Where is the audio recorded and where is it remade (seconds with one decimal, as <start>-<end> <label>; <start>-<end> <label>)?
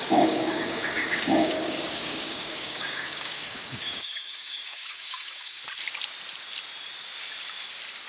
0.0-5.6 remade; 5.6-8.1 recorded